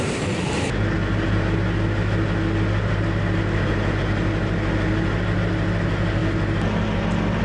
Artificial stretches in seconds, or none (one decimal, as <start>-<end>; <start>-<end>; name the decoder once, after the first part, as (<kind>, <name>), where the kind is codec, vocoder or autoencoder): none